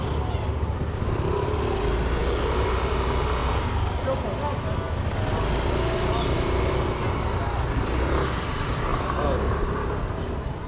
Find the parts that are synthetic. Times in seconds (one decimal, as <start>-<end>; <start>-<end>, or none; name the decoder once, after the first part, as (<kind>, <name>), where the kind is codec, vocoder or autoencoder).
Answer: 8.9-9.6 (vocoder, BigVGAN v2)